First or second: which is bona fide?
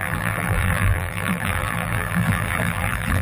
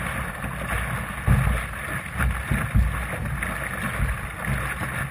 second